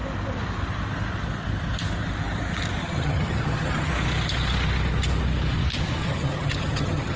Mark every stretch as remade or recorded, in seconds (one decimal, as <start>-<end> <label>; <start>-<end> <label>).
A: 0.0-2.8 recorded; 2.8-3.9 remade; 3.9-6.0 recorded; 6.0-7.2 remade